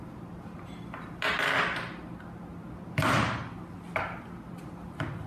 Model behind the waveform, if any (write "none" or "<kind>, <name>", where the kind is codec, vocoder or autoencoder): none